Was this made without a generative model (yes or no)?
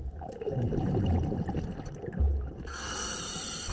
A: yes